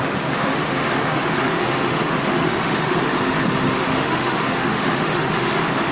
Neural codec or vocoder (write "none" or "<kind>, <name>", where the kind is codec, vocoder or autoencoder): autoencoder, DAC-VAE